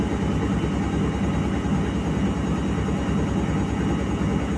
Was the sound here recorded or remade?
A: recorded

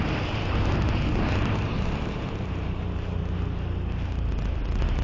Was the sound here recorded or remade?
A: recorded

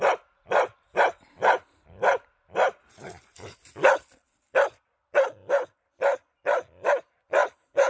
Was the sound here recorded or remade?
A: recorded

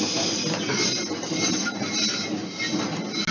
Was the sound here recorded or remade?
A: recorded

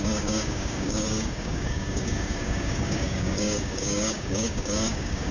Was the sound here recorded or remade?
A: remade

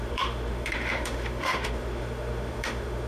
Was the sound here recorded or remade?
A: remade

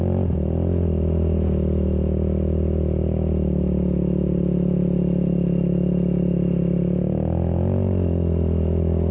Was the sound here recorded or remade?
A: recorded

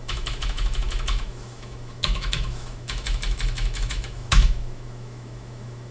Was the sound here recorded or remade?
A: remade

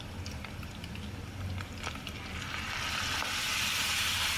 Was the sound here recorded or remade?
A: recorded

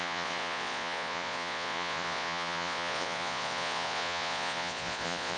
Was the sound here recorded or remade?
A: remade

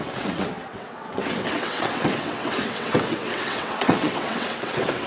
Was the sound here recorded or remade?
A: remade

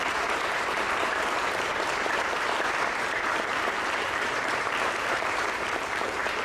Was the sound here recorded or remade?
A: remade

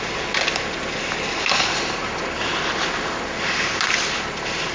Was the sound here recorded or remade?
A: recorded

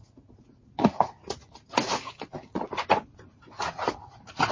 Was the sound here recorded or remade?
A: remade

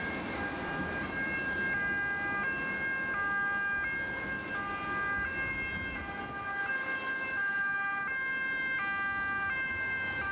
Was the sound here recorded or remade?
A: recorded